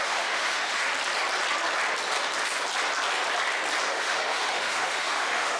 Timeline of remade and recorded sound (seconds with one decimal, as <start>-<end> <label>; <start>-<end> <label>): 0.0-0.8 remade; 0.8-3.9 recorded; 3.9-5.6 remade